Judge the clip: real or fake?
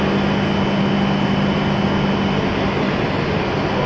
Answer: real